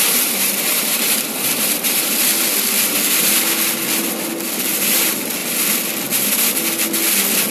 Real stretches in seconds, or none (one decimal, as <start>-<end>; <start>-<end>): 2.3-4.7; 5.4-7.5